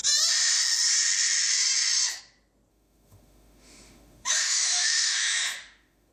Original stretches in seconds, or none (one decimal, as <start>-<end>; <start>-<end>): 0.0-2.7